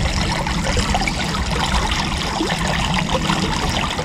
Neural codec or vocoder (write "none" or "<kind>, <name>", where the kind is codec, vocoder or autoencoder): none